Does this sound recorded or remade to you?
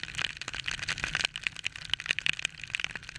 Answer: recorded